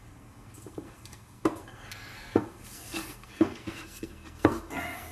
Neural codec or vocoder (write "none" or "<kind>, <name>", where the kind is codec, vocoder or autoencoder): codec, SNAC